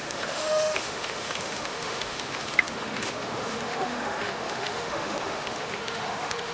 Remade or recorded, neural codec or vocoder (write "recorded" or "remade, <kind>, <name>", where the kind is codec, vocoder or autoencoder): remade, autoencoder, DAC-VAE